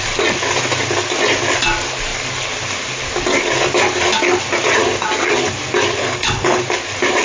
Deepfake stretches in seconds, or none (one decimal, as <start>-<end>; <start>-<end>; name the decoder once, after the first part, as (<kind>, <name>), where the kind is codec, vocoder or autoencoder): 6.0-6.6 (codec, HILCodec)